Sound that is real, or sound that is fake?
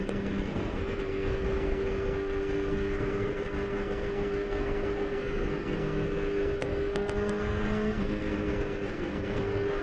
fake